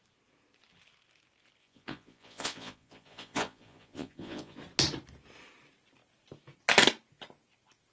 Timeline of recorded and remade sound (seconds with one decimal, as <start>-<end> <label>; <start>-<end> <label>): 0.0-1.6 recorded; 1.6-4.6 remade; 4.6-7.9 recorded

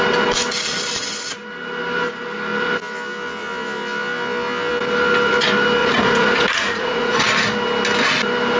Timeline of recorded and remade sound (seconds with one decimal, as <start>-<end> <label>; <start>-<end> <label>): 0.0-5.8 recorded; 5.8-7.2 remade; 7.2-8.6 recorded